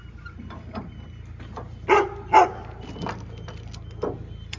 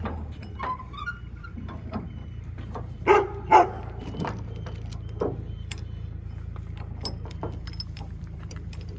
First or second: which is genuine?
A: first